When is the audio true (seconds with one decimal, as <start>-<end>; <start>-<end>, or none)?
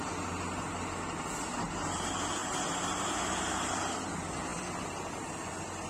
0.0-5.9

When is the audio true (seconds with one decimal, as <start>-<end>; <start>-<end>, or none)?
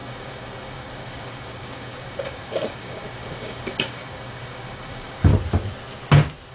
5.3-6.5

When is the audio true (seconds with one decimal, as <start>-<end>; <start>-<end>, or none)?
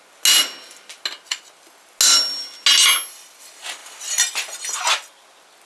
0.0-5.7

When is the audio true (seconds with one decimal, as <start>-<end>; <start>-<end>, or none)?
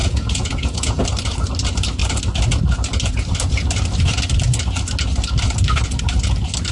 1.0-6.7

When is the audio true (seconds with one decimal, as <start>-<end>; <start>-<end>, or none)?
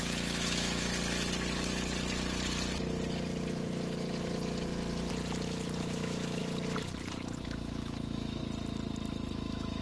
0.9-5.8; 6.4-7.4; 8.4-9.3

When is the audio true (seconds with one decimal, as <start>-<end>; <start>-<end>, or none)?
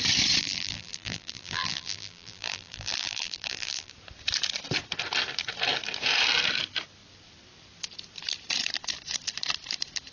0.0-0.4; 3.9-10.1